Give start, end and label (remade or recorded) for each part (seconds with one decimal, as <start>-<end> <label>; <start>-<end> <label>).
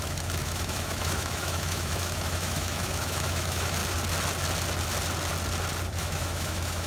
0.0-3.8 remade; 3.8-5.9 recorded; 5.9-6.9 remade